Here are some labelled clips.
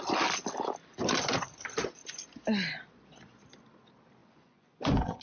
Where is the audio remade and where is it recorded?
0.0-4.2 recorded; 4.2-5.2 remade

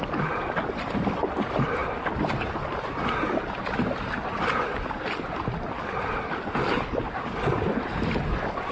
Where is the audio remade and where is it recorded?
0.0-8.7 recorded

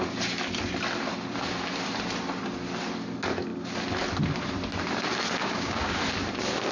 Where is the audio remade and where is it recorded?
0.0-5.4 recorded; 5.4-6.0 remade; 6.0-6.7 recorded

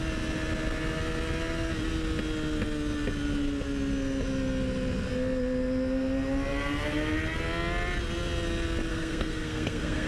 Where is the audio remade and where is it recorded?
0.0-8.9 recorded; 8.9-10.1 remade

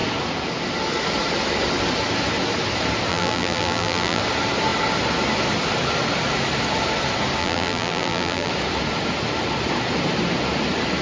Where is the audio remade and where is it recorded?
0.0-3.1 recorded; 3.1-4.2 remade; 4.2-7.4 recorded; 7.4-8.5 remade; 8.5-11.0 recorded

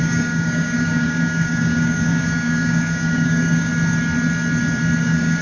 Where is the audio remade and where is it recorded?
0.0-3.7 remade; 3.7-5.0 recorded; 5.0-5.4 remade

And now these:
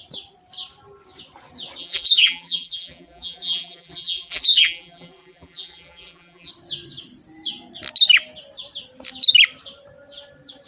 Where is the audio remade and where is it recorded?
0.0-1.8 recorded; 1.8-6.5 remade; 6.5-10.7 recorded